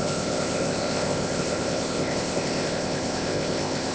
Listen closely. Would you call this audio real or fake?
fake